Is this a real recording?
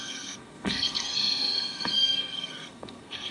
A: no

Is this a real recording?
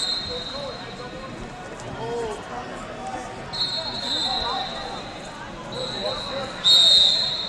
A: yes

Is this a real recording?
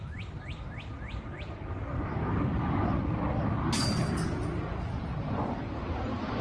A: yes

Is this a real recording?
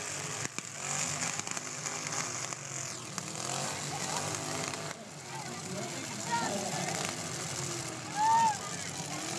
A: yes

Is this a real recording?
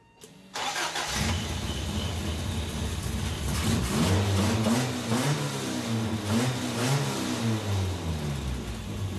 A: yes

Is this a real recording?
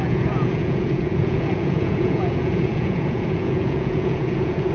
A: no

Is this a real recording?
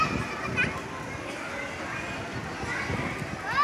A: yes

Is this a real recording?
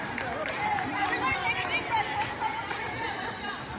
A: no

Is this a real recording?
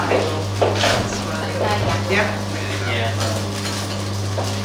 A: yes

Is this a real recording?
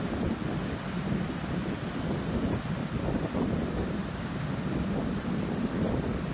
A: yes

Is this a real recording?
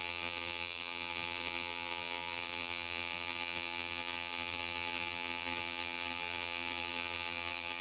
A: no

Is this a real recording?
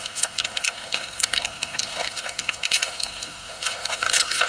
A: no